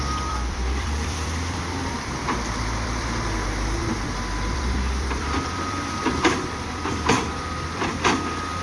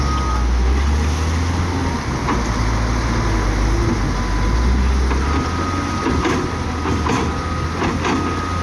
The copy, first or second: first